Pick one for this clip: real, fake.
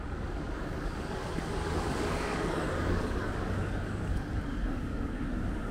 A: fake